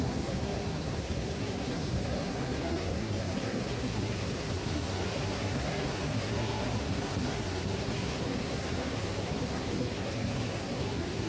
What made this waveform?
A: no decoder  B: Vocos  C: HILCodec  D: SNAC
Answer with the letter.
D